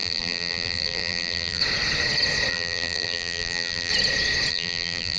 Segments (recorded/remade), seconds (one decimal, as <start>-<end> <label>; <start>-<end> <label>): 0.0-1.6 remade; 1.6-2.5 recorded; 2.5-3.9 remade; 3.9-4.5 recorded; 4.5-5.2 remade